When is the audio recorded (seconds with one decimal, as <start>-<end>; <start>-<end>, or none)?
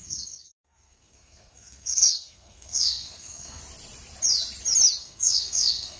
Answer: 3.6-5.0